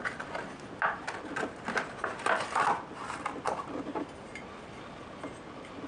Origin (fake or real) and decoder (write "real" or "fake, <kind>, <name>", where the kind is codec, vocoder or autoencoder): real